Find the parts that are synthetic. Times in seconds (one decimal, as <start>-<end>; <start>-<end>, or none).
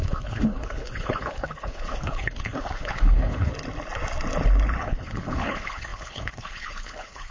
0.0-3.5; 4.8-7.3